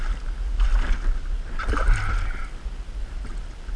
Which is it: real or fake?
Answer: real